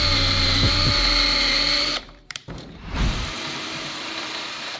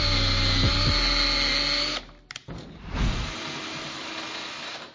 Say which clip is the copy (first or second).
first